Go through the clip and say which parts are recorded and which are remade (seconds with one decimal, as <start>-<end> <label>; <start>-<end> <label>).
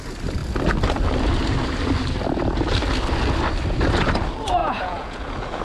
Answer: 0.0-4.6 recorded; 4.6-5.6 remade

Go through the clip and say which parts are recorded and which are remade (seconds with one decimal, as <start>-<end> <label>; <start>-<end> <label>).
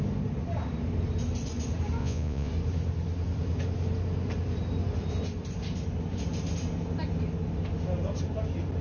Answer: 0.0-2.0 recorded; 2.0-2.5 remade; 2.5-8.8 recorded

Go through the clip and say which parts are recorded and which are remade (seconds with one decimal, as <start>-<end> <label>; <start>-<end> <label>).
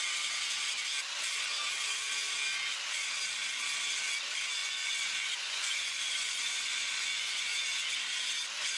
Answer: 0.0-4.6 recorded; 4.6-7.5 remade; 7.5-8.8 recorded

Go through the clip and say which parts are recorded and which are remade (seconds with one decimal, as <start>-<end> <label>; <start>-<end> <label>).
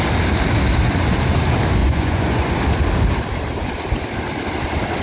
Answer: 0.0-1.8 recorded; 1.8-2.5 remade; 2.5-5.0 recorded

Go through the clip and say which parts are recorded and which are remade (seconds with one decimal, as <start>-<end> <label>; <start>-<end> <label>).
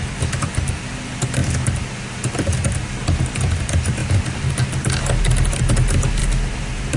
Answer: 0.0-7.0 recorded